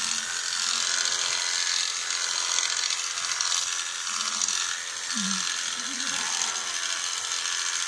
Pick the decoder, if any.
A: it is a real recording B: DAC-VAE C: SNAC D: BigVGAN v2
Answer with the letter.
A